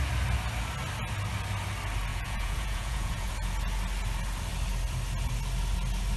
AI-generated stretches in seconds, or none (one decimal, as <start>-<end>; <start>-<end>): 2.1-3.3